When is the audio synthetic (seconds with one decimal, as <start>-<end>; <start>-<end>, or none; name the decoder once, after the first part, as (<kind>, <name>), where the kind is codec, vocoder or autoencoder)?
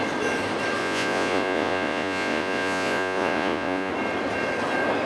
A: 0.8-3.9 (vocoder, Vocos)